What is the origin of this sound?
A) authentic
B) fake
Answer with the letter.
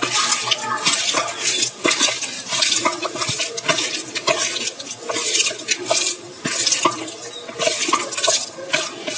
A